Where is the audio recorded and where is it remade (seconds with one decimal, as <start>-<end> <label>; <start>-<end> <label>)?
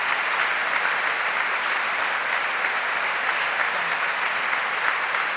0.0-0.6 recorded; 0.6-2.3 remade; 2.3-5.4 recorded